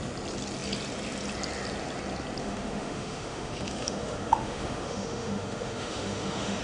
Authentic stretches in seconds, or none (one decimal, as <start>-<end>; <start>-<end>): 0.0-2.4